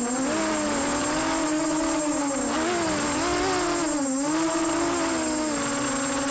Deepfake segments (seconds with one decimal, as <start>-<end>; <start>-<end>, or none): none